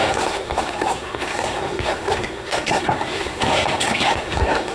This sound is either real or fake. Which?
fake